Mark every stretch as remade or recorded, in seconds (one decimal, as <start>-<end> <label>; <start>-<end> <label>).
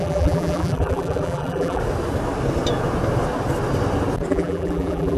0.0-1.8 remade; 1.8-4.3 recorded; 4.3-5.2 remade